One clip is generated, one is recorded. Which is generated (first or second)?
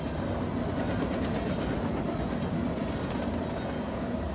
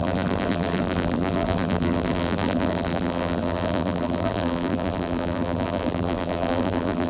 second